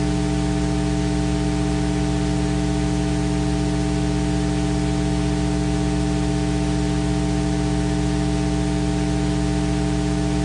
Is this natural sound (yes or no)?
yes